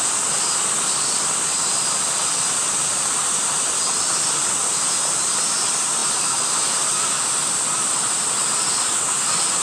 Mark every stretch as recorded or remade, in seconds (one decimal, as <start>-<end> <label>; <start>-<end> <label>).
0.0-9.6 recorded